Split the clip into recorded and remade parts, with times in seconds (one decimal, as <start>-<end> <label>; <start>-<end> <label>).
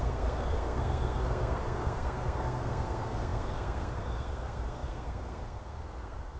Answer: 0.0-6.4 remade